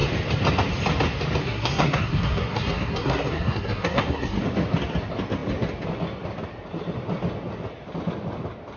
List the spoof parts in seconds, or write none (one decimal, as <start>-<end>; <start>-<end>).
1.4-4.4